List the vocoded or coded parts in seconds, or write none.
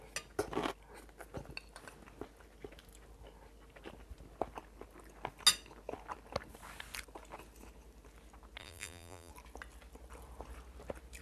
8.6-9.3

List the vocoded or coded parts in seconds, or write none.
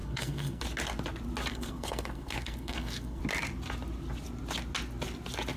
0.0-0.6; 1.5-3.2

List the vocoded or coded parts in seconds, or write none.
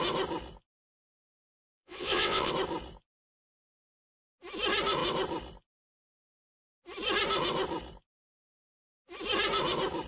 1.6-2.5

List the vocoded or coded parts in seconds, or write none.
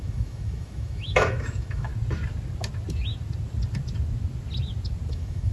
0.0-1.9; 5.1-5.5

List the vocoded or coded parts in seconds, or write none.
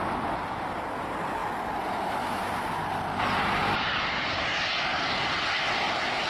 none